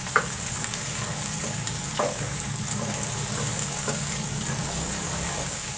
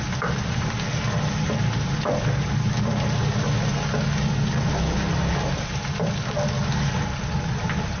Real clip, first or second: second